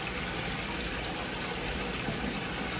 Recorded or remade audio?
recorded